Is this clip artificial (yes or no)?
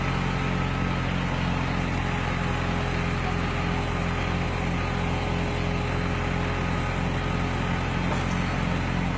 no